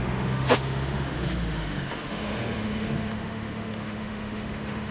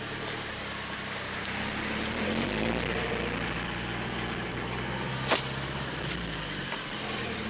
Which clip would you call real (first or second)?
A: second